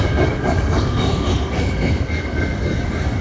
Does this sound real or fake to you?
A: fake